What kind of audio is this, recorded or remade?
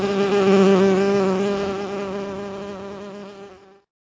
recorded